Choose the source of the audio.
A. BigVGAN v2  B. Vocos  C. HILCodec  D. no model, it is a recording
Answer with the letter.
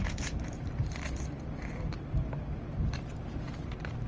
A